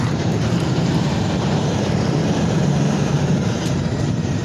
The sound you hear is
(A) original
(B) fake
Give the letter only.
B